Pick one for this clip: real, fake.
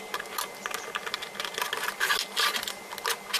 real